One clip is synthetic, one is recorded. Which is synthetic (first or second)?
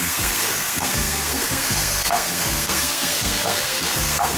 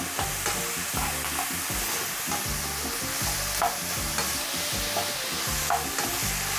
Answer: first